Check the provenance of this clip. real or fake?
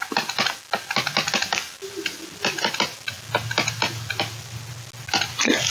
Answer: real